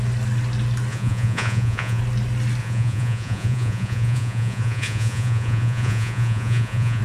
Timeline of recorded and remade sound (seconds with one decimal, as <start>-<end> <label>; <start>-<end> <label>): 0.0-0.9 recorded; 0.9-2.0 remade; 2.0-2.6 recorded; 2.6-7.0 remade